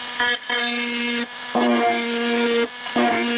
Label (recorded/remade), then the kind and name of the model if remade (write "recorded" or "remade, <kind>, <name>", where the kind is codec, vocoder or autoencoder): recorded